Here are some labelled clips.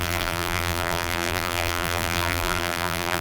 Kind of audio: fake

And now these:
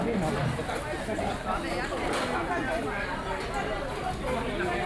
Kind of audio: real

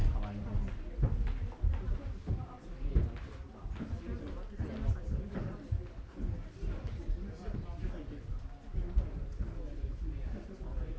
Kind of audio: real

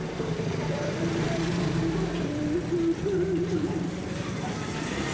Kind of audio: fake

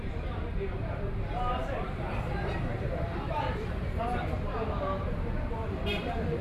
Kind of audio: fake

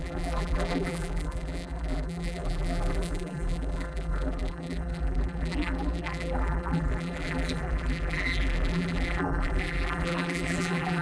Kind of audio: fake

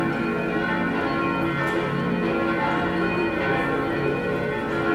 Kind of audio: real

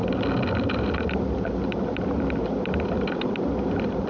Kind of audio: real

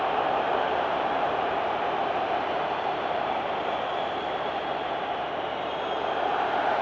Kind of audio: fake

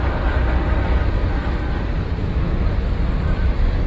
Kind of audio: real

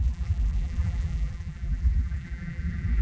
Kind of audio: fake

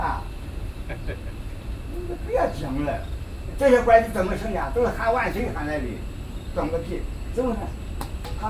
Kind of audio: real